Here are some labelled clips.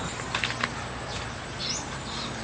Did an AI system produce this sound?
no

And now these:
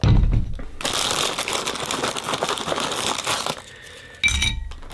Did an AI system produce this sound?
no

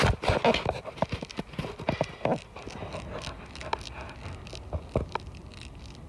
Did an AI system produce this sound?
no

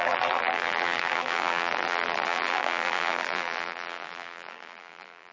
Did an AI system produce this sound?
yes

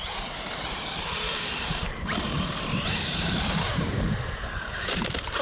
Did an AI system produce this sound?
yes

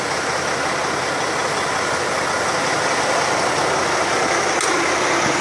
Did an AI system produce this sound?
no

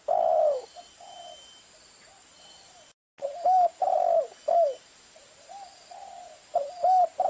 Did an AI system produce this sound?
no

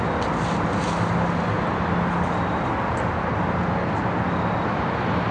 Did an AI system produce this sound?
no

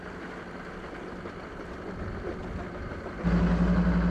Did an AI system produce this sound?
no